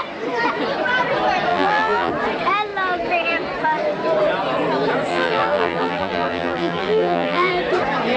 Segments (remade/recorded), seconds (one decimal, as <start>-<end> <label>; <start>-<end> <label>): 0.0-1.5 recorded; 1.5-2.1 remade; 2.1-5.1 recorded; 5.1-7.5 remade; 7.5-8.2 recorded